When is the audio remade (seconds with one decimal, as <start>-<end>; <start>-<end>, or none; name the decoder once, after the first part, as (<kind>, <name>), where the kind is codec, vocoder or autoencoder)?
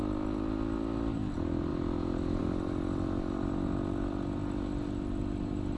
none